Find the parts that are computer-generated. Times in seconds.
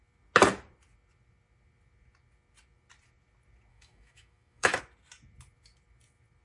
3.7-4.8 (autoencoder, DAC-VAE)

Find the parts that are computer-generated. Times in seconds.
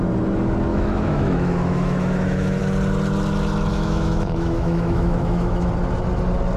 0.7-2.6 (autoencoder, DAC-VAE); 3.7-5.7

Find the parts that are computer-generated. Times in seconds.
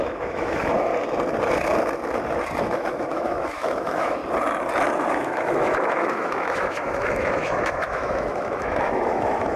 0.0-0.9 (autoencoder, DAC-VAE); 2.6-4.2; 5.1-9.6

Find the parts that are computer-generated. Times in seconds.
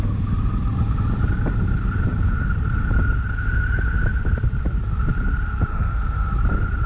5.7-6.3 (autoencoder, DAC-VAE)